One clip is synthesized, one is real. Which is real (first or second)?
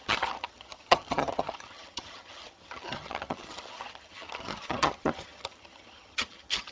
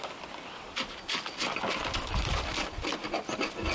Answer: second